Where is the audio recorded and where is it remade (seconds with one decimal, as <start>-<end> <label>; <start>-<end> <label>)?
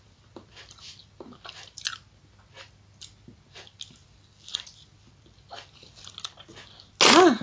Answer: 0.0-7.4 recorded